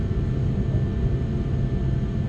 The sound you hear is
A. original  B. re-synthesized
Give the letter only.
A